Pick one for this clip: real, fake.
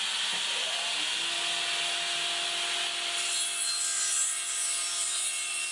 real